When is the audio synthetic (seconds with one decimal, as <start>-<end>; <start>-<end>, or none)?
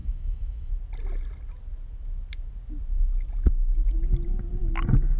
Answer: 0.0-0.7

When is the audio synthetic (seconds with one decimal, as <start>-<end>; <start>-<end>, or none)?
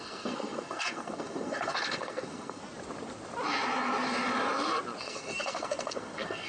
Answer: 0.0-2.6; 5.0-6.5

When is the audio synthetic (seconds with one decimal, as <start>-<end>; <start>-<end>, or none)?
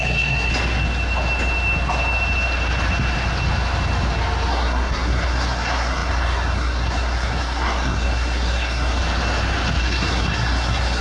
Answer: 0.0-0.5; 4.5-9.0; 9.8-11.0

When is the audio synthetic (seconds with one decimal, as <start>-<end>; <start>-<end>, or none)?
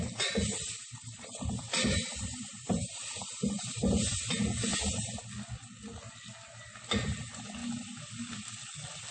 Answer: 0.8-4.3; 4.7-5.2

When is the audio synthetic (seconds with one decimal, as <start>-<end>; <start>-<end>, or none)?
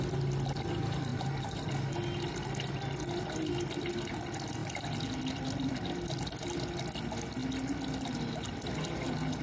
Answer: 1.1-1.7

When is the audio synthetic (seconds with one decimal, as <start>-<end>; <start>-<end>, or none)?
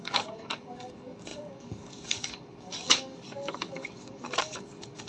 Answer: 0.0-5.1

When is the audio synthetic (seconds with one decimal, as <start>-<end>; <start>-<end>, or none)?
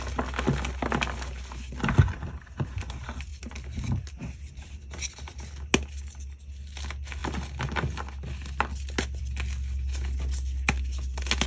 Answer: none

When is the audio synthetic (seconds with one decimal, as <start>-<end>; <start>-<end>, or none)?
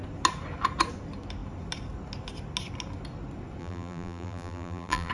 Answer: 3.6-5.1